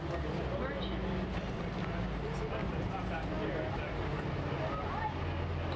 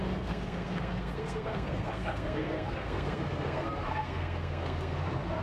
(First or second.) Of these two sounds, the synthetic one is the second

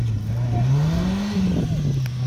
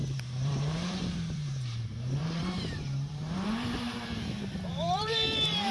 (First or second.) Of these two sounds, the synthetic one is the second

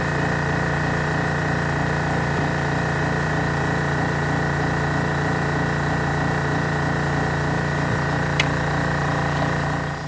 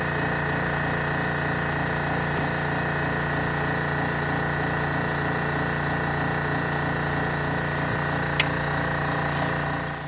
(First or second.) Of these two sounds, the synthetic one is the first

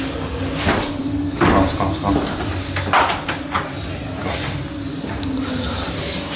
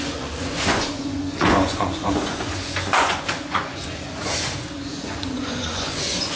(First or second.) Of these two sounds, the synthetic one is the second